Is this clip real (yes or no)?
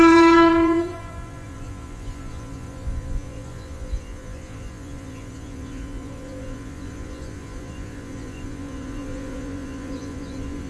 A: no